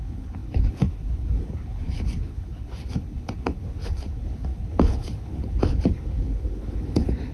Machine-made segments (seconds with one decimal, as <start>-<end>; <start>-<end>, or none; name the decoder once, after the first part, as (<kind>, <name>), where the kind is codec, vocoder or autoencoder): 0.0-7.3 (codec, HILCodec)